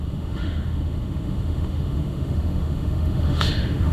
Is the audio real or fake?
fake